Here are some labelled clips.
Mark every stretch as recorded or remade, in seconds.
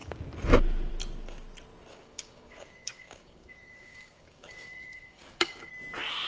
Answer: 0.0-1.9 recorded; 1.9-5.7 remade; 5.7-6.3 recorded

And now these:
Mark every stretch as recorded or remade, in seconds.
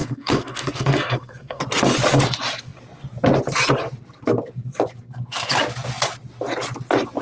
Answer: 0.0-1.6 remade; 1.6-7.2 recorded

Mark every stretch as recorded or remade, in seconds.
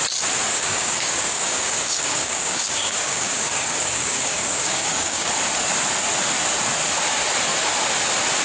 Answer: 0.0-0.5 recorded; 0.5-5.3 remade; 5.3-8.4 recorded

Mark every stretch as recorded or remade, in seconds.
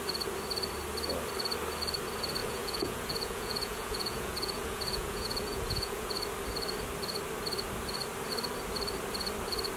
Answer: 0.0-2.4 recorded; 2.4-6.1 remade; 6.1-9.8 recorded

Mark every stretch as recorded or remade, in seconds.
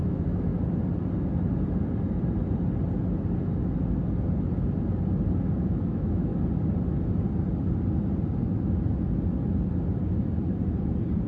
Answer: 0.0-0.5 remade; 0.5-5.7 recorded; 5.7-6.3 remade; 6.3-11.3 recorded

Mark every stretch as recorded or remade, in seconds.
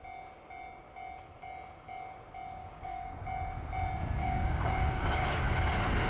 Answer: 0.0-2.6 recorded; 2.6-3.2 remade; 3.2-4.2 recorded; 4.2-5.4 remade; 5.4-6.1 recorded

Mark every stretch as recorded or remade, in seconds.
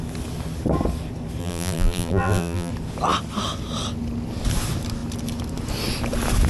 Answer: 0.0-1.4 recorded; 1.4-2.7 remade; 2.7-6.5 recorded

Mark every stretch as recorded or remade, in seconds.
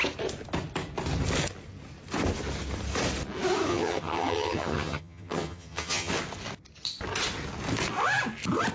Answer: 0.0-3.7 recorded; 3.7-6.1 remade; 6.1-8.7 recorded